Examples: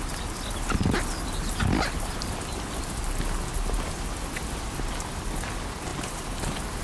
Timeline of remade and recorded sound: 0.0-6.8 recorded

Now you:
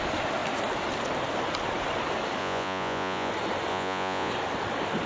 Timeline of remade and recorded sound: 0.0-2.4 recorded; 2.4-3.3 remade; 3.3-3.7 recorded; 3.7-4.3 remade; 4.3-5.1 recorded

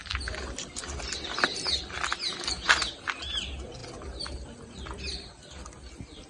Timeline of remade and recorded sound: 0.0-6.3 recorded

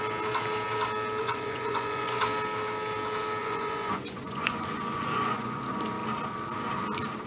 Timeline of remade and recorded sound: 0.0-1.2 recorded; 1.2-2.2 remade; 2.2-3.4 recorded; 3.4-5.6 remade; 5.6-7.3 recorded

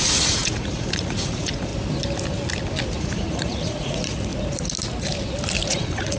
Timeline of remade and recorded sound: 0.0-1.7 remade; 1.7-3.0 recorded; 3.0-4.3 remade; 4.3-5.7 recorded; 5.7-6.2 remade

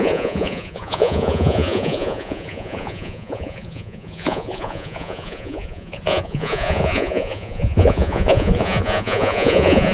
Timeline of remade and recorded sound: 0.0-9.9 remade

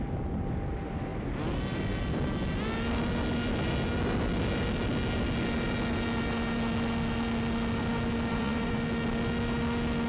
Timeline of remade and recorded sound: 0.0-8.3 recorded; 8.3-8.8 remade; 8.8-10.1 recorded